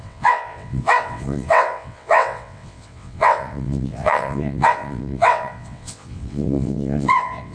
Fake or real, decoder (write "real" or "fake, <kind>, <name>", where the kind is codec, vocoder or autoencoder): fake, vocoder, WaveNeXt